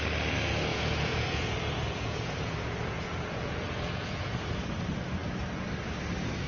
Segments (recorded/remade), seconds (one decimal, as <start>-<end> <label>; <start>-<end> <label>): 0.0-0.7 recorded; 0.7-4.6 remade; 4.6-6.5 recorded